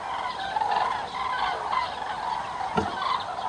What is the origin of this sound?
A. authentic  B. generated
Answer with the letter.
A